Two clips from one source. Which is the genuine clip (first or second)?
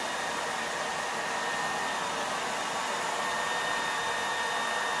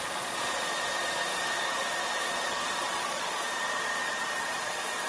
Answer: first